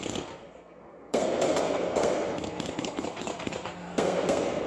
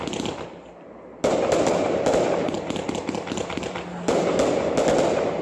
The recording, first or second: second